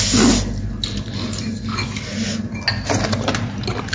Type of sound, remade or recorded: recorded